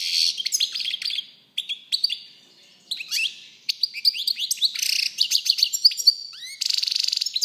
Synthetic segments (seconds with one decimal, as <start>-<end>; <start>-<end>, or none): none